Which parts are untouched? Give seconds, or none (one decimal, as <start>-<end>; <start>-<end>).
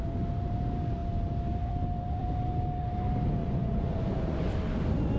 0.0-3.4; 4.5-5.2